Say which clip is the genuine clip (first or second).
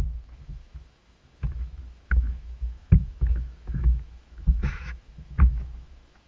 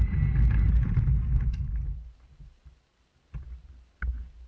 second